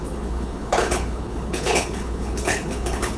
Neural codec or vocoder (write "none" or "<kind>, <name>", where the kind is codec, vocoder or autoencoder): codec, HILCodec